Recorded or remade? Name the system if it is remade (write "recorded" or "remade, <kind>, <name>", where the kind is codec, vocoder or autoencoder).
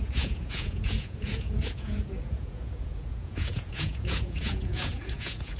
remade, vocoder, Vocos